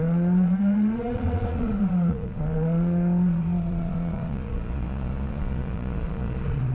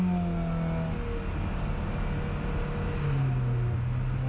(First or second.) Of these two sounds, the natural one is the second